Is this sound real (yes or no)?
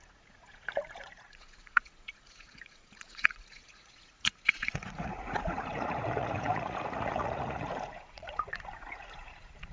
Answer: no